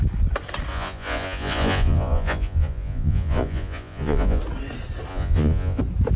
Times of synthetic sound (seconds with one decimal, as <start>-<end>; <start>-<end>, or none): 0.7-4.4; 5.1-5.8